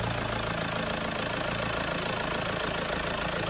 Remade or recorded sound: recorded